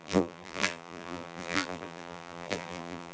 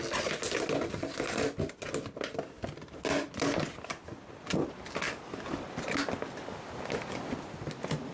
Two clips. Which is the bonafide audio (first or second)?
second